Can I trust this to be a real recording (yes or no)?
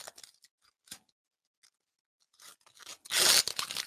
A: yes